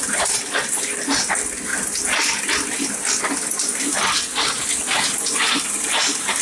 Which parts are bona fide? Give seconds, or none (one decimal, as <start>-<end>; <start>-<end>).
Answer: 0.0-6.4